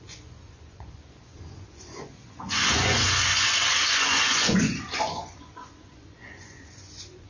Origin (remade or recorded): remade